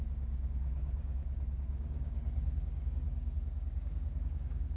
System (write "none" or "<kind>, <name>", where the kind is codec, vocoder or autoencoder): codec, DAC